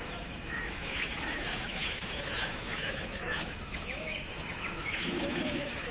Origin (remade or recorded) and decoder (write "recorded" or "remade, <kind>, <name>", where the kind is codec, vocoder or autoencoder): remade, autoencoder, DAC-VAE